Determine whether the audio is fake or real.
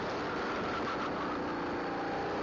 real